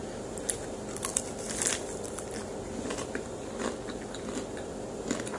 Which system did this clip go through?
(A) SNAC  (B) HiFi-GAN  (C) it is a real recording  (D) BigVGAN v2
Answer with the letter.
C